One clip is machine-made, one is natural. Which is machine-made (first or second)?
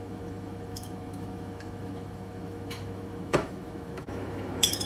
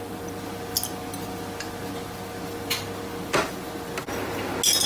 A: first